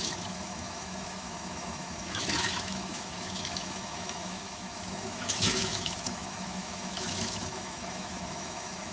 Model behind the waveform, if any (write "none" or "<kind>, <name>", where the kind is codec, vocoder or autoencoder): autoencoder, DAC-VAE